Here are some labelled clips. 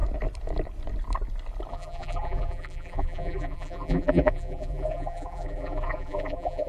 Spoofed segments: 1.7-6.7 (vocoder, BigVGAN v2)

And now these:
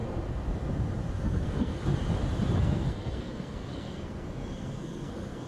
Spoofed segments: 1.2-1.8 (codec, SNAC); 2.6-5.5

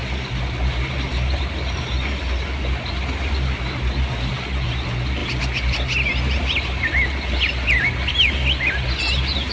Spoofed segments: none